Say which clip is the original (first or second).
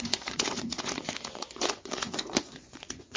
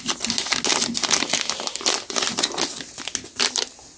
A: second